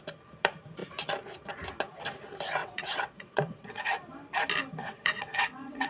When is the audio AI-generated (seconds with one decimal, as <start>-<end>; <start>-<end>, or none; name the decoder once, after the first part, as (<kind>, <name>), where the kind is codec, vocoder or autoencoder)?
2.6-3.8 (vocoder, WaveNeXt); 4.8-5.9